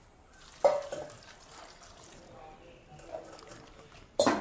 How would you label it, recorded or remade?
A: recorded